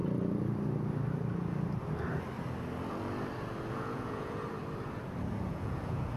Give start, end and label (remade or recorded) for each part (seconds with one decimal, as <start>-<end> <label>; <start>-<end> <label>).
0.0-3.7 recorded; 3.7-4.6 remade; 4.6-5.3 recorded; 5.3-6.2 remade